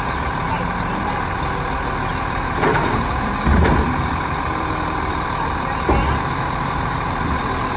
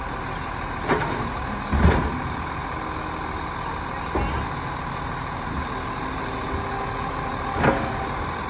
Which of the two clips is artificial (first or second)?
first